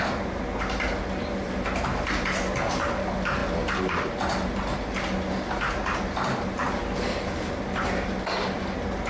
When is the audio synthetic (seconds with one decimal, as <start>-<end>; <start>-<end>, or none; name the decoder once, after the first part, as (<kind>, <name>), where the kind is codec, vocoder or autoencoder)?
none